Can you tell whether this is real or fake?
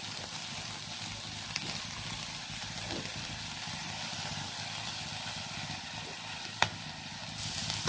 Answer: real